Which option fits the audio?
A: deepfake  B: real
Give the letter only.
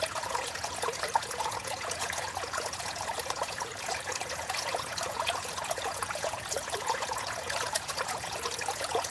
A